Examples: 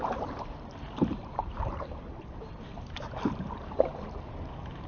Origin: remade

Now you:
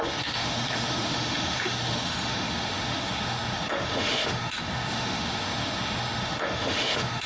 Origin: remade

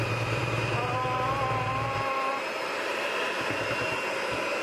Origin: remade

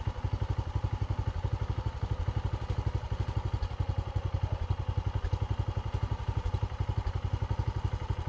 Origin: recorded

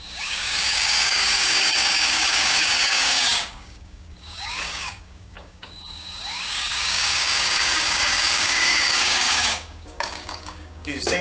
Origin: remade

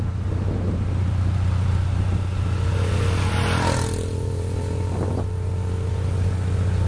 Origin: recorded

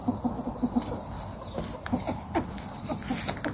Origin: recorded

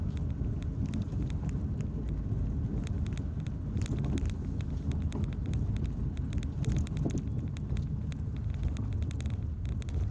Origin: recorded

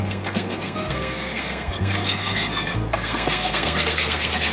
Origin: remade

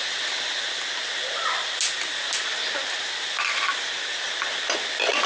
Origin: recorded